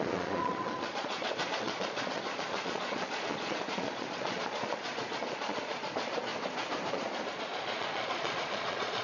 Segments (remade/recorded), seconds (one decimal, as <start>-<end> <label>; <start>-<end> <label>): 0.0-6.3 remade; 6.3-6.9 recorded; 6.9-9.0 remade